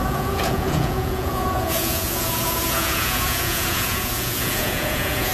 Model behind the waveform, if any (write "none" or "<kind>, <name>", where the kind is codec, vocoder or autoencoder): vocoder, Vocos